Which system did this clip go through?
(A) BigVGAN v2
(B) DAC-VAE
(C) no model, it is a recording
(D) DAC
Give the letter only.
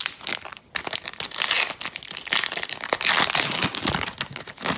C